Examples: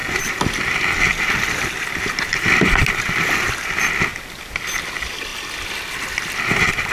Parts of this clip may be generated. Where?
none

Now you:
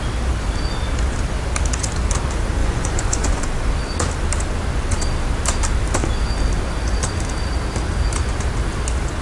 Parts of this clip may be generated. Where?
2.6-3.4 (vocoder, Vocos)

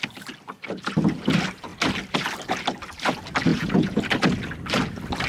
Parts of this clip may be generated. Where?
3.5-4.0 (vocoder, Vocos)

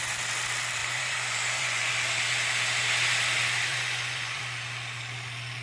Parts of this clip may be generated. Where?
0.8-1.9 (vocoder, Vocos); 3.7-4.4

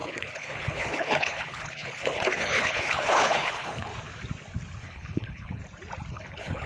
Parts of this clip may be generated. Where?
0.0-3.9 (codec, HILCodec); 4.8-5.6; 6.1-6.7

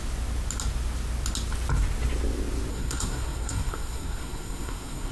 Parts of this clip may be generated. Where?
2.7-5.1 (codec, SNAC)